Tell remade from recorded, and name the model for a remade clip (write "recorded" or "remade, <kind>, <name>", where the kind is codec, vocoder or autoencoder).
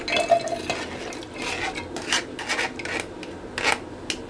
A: recorded